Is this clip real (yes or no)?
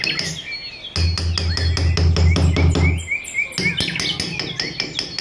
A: yes